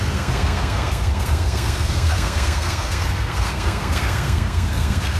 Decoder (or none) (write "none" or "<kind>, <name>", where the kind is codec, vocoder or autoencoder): codec, SNAC